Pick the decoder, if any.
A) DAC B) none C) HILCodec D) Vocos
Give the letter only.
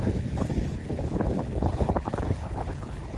C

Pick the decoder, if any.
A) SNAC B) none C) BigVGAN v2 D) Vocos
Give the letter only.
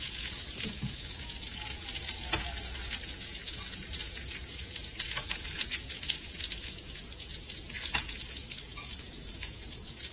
D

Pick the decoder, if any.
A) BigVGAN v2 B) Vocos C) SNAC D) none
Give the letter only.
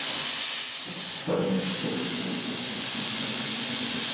B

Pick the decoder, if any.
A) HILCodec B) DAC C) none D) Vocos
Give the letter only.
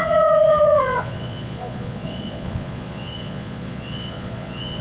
D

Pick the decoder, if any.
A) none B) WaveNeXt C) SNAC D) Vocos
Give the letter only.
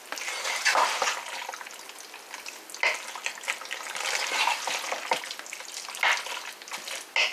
A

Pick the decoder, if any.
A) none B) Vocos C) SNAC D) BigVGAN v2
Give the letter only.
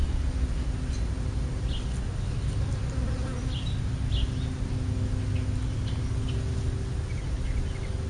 A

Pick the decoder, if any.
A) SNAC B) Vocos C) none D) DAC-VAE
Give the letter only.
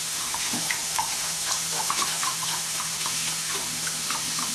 D